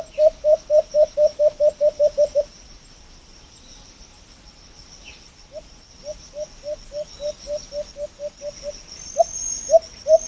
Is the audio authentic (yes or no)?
yes